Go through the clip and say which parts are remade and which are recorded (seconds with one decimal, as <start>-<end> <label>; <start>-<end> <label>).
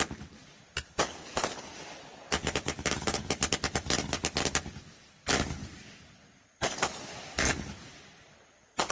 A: 0.0-0.4 recorded; 0.4-1.0 remade; 1.0-5.6 recorded; 5.6-8.5 remade; 8.5-8.9 recorded